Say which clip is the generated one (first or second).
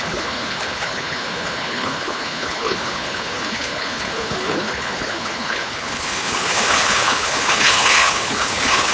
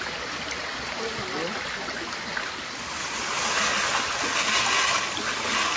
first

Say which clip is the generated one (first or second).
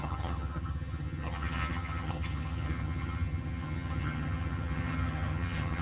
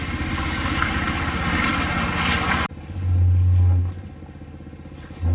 first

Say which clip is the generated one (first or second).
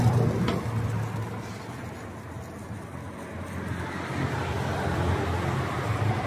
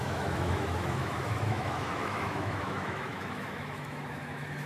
second